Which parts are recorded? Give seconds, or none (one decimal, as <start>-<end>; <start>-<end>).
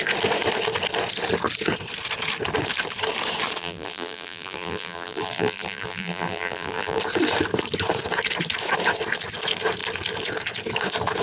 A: 0.0-3.6; 7.0-11.2